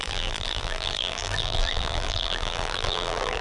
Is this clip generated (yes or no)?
yes